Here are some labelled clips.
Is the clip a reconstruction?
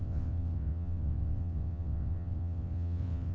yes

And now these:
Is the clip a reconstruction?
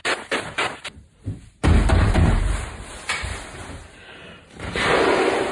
yes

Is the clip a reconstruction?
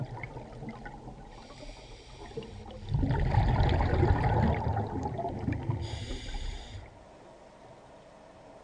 no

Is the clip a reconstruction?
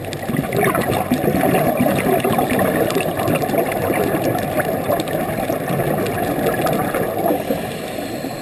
no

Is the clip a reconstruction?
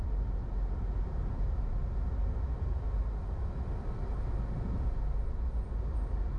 no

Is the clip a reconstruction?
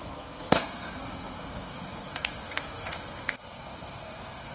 yes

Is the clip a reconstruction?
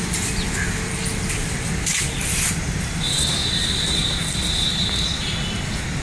no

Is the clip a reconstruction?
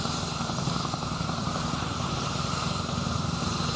yes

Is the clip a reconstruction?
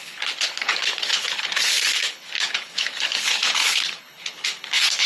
yes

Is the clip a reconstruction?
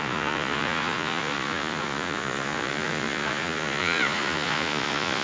yes